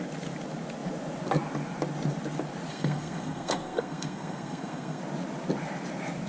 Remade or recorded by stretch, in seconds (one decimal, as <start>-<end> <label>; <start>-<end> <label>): 0.0-2.7 recorded; 2.7-5.0 remade; 5.0-6.3 recorded